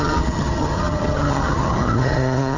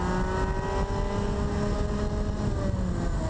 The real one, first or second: second